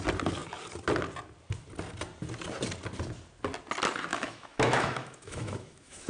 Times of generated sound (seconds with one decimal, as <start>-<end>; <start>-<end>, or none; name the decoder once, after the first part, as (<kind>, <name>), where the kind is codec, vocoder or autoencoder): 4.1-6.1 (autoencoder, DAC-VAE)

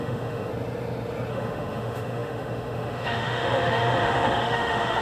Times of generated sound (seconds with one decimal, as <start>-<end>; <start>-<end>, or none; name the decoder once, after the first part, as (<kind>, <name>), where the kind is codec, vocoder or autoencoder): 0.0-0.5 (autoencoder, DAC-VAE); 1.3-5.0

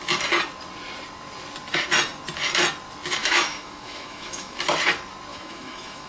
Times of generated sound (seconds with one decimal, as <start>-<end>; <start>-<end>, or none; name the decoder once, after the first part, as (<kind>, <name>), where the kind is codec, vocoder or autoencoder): 3.2-4.6 (autoencoder, DAC-VAE); 5.3-6.1